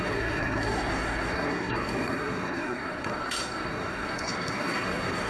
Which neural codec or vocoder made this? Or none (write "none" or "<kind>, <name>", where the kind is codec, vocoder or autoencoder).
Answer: codec, SNAC